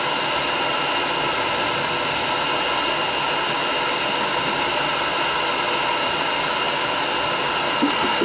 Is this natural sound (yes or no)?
yes